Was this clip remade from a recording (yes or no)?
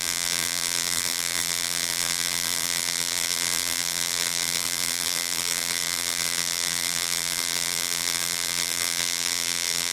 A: yes